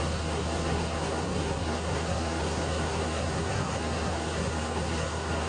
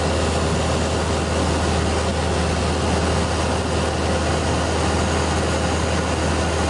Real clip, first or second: second